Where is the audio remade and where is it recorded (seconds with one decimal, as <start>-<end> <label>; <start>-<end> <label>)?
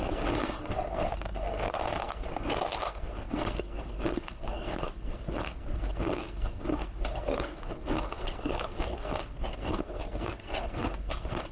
0.0-11.5 remade